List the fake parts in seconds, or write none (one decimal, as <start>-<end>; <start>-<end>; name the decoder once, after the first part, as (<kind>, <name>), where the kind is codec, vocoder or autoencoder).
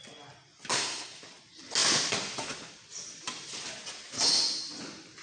0.7-1.2 (codec, SNAC)